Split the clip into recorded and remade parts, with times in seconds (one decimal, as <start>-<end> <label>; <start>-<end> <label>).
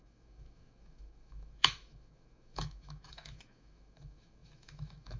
0.0-5.2 remade